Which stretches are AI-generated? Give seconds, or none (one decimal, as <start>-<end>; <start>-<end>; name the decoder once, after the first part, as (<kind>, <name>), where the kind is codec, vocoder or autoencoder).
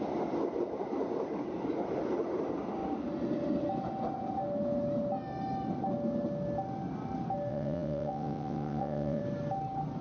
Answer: 7.5-9.2 (vocoder, WaveNeXt)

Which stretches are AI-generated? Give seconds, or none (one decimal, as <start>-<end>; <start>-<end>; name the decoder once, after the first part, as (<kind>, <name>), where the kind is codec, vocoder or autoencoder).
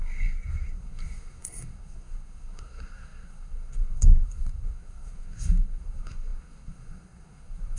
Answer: 0.0-7.8 (codec, SNAC)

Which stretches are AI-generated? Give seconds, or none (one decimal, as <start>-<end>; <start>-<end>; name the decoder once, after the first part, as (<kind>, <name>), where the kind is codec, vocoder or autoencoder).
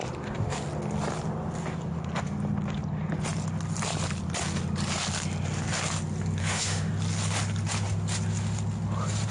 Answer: 6.4-6.9 (autoencoder, DAC-VAE)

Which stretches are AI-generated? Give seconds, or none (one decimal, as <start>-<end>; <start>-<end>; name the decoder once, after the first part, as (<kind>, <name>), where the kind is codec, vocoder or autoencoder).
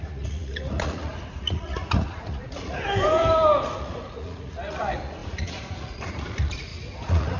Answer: 0.0-2.8 (vocoder, Vocos); 3.8-7.4